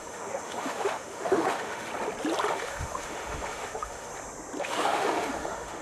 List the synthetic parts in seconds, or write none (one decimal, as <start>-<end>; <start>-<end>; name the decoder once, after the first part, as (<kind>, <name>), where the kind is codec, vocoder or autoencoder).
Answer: 0.0-1.9 (autoencoder, DAC-VAE); 2.5-4.1; 4.6-5.8